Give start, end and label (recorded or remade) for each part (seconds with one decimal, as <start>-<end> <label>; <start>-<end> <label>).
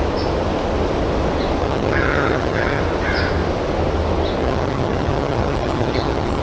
0.0-1.6 recorded; 1.6-2.8 remade; 2.8-4.4 recorded; 4.4-6.4 remade